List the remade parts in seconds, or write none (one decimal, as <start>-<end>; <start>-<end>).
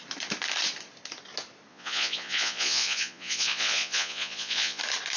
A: 1.7-4.8